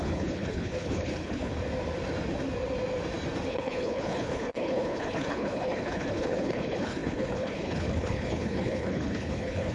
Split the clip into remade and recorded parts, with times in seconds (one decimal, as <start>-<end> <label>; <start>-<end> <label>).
0.0-1.5 remade; 1.5-3.5 recorded; 3.5-9.7 remade